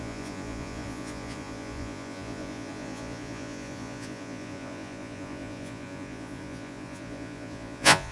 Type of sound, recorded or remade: remade